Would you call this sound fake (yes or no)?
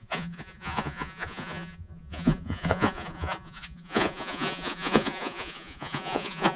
yes